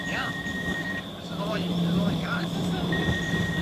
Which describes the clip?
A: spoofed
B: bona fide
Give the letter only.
A